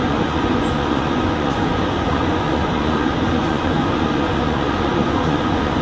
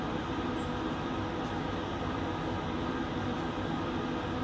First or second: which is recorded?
second